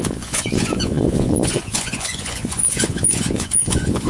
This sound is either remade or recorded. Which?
remade